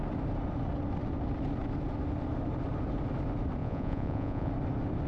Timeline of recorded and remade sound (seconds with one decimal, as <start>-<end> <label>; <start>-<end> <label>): 0.0-3.6 recorded; 3.6-4.5 remade; 4.5-5.1 recorded

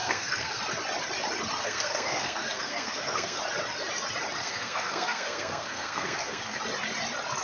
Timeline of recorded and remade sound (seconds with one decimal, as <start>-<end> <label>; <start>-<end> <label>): 0.0-0.6 remade; 0.6-1.6 recorded; 1.6-3.4 remade; 3.4-4.4 recorded; 4.4-6.6 remade; 6.6-7.4 recorded

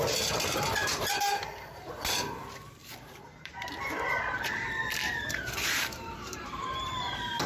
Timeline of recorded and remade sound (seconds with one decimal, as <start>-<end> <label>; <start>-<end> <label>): 0.0-2.8 recorded; 2.8-7.5 remade